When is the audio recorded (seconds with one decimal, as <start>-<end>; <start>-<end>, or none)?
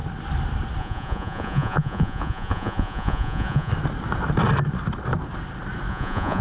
0.0-0.8; 3.7-5.9